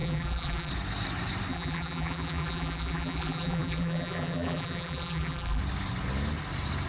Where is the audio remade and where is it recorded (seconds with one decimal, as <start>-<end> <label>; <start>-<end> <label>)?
0.0-0.7 remade; 0.7-1.5 recorded; 1.5-5.6 remade; 5.6-6.9 recorded